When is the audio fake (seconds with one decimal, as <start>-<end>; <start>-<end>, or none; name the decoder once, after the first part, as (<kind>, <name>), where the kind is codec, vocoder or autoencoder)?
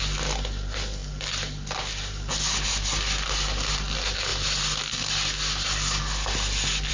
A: none